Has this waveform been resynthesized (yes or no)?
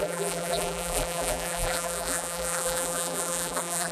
yes